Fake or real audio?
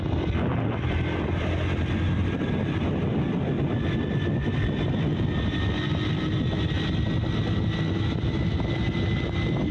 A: real